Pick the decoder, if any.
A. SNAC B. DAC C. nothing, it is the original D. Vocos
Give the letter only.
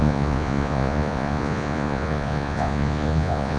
D